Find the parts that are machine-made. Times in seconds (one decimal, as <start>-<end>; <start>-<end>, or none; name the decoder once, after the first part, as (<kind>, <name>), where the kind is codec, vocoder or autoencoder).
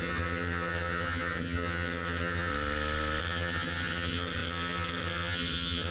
0.0-2.5 (vocoder, HiFi-GAN); 3.2-5.9